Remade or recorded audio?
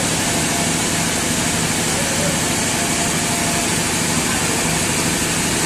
recorded